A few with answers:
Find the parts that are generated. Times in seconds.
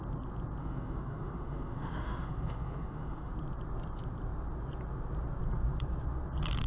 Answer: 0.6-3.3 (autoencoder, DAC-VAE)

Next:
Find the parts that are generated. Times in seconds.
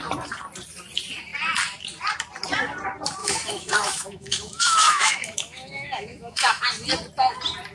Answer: 3.2-6.6 (autoencoder, DAC-VAE)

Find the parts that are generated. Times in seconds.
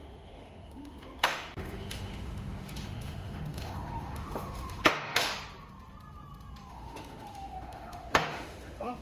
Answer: 0.0-5.3 (autoencoder, DAC-VAE); 6.7-9.0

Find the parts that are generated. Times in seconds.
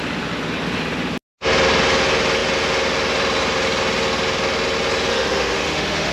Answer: 5.1-6.1 (autoencoder, DAC-VAE)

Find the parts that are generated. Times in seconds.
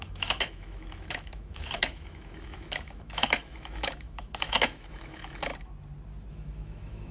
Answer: 0.0-5.5 (autoencoder, DAC-VAE); 6.3-7.1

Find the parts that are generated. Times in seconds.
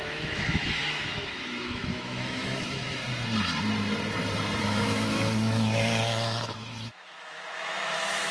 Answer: 0.0-3.0 (autoencoder, DAC-VAE); 4.6-8.3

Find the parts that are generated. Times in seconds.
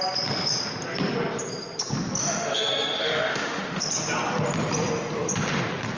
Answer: 2.2-3.8 (autoencoder, DAC-VAE)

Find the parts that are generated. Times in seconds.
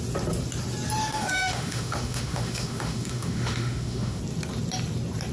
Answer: 1.0-4.2 (autoencoder, DAC-VAE)